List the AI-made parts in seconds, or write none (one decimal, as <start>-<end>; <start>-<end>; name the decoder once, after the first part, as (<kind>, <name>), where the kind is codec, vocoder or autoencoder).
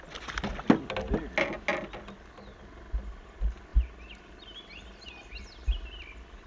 none